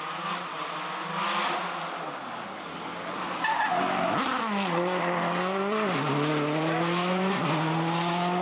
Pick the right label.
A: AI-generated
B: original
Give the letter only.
B